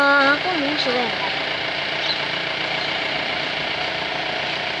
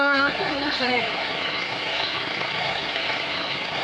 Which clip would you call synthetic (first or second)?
second